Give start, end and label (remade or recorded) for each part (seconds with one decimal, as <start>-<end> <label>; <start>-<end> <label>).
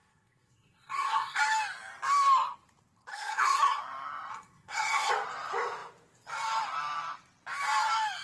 0.0-1.4 remade; 1.4-3.1 recorded; 3.1-3.8 remade; 3.8-4.3 recorded; 4.3-5.1 remade; 5.1-8.2 recorded